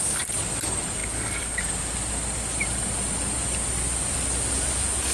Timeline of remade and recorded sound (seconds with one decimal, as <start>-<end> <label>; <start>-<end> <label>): 0.0-5.1 recorded